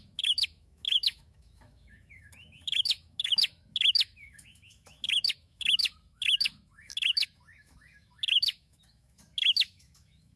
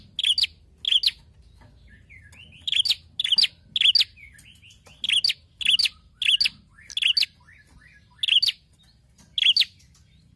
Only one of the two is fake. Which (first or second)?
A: first